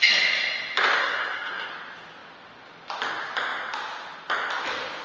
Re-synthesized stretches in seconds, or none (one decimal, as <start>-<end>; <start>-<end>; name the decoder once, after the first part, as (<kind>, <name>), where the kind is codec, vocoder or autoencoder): 1.0-1.7 (codec, SNAC)